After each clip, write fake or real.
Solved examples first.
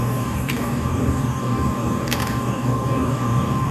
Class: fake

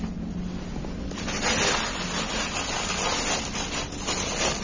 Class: real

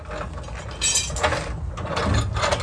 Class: real